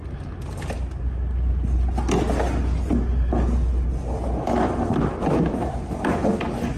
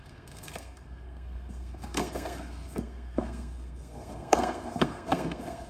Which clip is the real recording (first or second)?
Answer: first